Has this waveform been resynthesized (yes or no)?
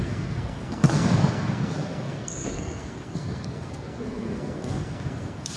yes